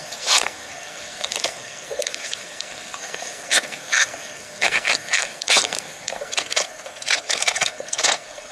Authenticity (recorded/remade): remade